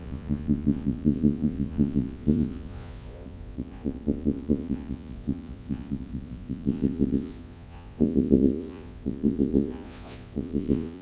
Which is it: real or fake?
fake